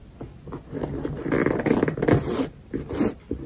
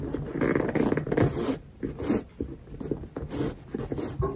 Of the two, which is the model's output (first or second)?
first